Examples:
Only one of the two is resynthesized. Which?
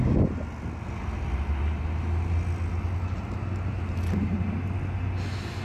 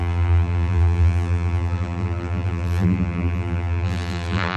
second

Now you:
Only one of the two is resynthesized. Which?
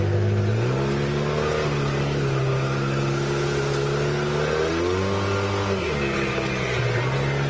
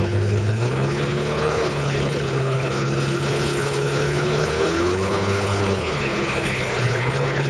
second